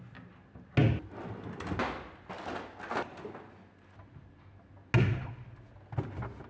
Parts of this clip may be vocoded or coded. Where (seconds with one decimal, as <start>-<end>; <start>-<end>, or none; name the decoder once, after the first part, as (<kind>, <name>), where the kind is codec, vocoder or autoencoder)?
none